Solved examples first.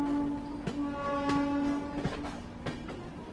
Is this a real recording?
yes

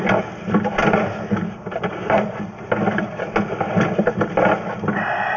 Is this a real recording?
yes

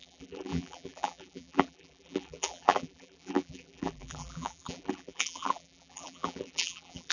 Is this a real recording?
no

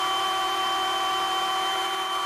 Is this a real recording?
no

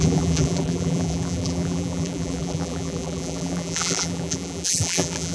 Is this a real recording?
no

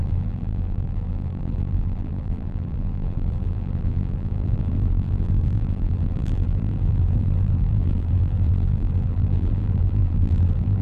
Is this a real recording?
no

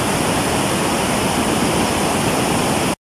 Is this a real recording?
yes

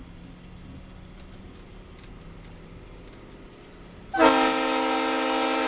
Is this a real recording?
yes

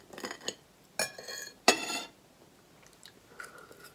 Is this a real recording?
yes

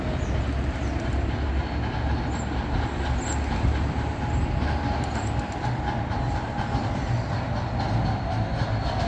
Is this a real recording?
yes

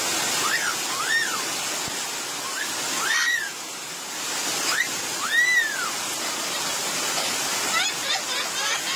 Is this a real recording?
yes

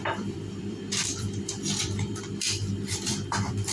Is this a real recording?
no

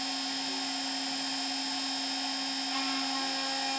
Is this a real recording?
yes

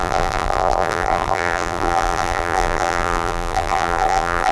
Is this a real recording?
no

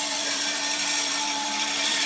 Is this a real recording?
no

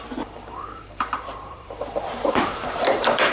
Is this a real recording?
no